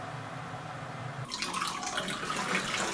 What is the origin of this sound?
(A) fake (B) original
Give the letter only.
B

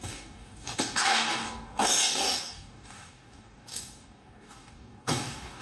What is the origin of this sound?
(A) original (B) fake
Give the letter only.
B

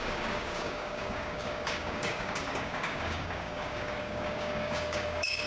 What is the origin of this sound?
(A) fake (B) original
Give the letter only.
A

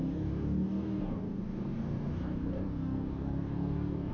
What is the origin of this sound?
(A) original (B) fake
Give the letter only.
B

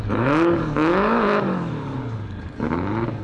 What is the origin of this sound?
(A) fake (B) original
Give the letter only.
A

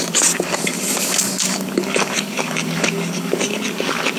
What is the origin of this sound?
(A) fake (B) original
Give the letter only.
A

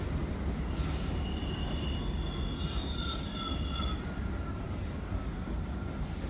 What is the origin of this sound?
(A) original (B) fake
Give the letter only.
A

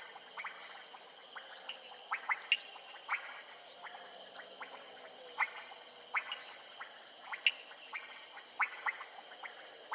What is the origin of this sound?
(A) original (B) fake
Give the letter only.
A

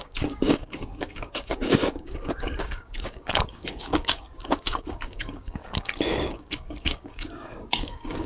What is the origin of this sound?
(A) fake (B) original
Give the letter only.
A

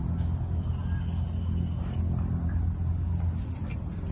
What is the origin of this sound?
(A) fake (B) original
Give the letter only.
B